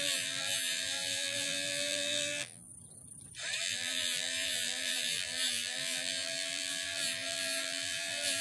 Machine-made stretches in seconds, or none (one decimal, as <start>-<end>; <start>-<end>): 0.0-2.7; 3.6-8.4